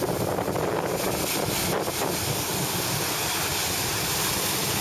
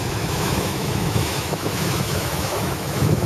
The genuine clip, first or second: first